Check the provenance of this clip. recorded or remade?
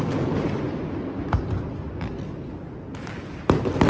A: recorded